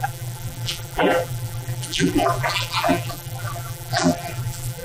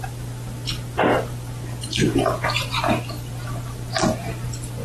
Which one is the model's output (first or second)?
first